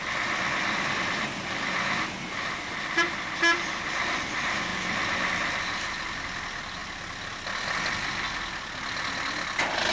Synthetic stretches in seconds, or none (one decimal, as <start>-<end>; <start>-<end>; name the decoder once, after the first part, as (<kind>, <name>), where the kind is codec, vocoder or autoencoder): none